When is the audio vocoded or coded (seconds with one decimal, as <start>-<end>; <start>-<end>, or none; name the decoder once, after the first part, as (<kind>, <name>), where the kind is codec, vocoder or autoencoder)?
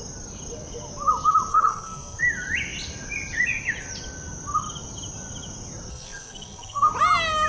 1.5-2.2 (codec, SNAC); 5.9-6.9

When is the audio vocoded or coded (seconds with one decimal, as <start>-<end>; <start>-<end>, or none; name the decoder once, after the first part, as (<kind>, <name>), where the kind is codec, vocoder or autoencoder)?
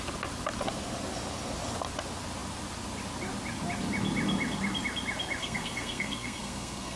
5.4-7.0 (codec, SNAC)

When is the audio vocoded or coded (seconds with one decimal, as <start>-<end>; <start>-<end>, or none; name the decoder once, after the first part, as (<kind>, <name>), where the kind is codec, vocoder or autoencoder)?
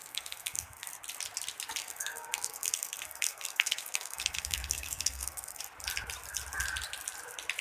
0.0-0.9 (codec, SNAC); 1.8-5.6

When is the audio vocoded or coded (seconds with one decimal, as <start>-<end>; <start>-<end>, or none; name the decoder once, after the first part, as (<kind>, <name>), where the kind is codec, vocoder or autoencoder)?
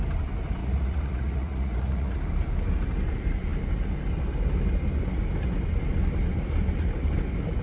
0.6-2.2 (vocoder, Vocos)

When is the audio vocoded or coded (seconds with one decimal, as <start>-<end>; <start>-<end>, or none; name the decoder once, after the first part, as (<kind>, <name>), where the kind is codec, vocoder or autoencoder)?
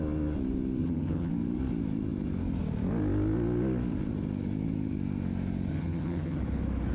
0.8-1.3 (vocoder, HiFi-GAN); 5.7-6.4